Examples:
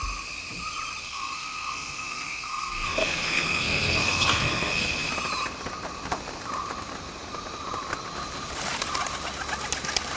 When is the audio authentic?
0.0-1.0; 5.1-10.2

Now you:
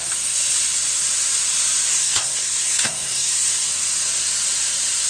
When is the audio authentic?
0.0-1.9; 3.7-5.1

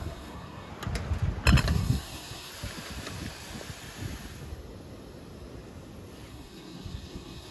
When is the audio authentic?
0.7-1.7; 2.5-6.3

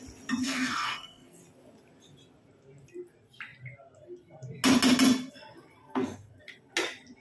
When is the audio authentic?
0.0-0.4; 1.4-5.8; 6.4-7.2

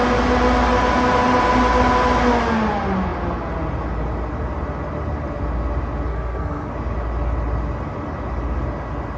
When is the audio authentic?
0.0-6.1; 6.7-9.2

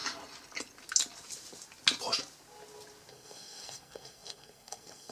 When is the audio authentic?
0.0-3.1

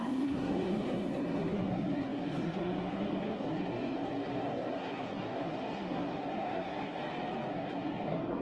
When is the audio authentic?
7.0-7.5